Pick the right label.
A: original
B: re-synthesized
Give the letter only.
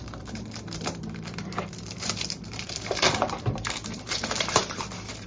B